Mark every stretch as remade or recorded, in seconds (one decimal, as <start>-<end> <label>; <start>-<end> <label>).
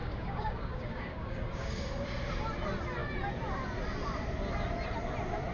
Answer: 0.0-1.8 remade; 1.8-5.5 recorded